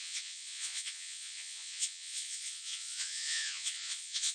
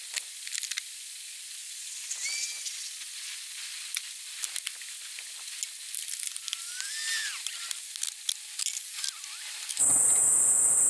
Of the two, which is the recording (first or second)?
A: second